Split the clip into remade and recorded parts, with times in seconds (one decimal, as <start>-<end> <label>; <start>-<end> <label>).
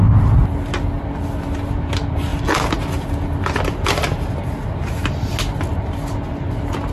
0.0-6.9 recorded